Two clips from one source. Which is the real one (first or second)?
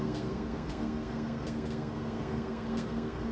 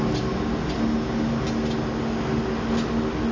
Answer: second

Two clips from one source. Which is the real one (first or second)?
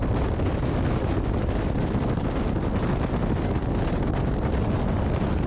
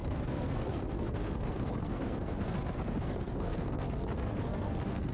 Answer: first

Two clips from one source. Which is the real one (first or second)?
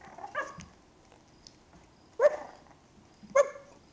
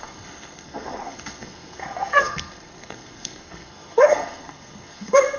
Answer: first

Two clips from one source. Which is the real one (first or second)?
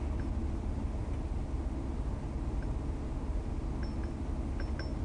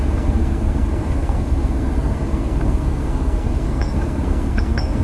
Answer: first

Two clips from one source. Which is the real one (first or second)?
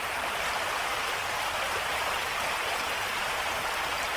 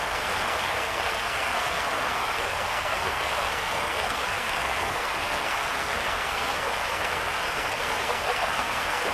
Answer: first